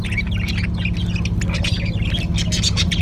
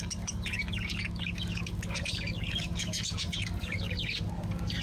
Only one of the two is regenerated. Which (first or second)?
second